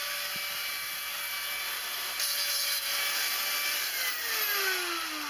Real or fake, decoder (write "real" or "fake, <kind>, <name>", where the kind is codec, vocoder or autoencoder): real